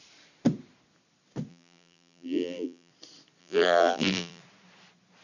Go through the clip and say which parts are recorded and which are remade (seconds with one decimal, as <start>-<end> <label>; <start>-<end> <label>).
0.0-1.5 recorded; 1.5-2.9 remade; 2.9-3.4 recorded; 3.4-4.4 remade; 4.4-5.2 recorded